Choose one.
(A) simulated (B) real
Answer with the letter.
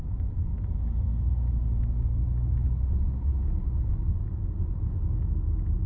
B